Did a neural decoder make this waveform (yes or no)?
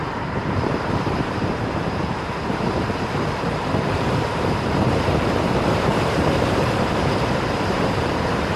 yes